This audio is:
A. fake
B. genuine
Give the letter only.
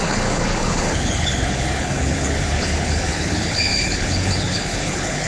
A